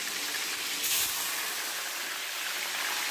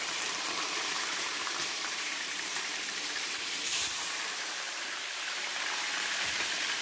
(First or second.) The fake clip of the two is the second